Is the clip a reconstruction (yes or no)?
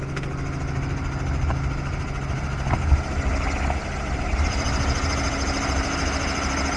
no